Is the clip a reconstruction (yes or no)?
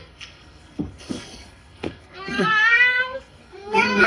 yes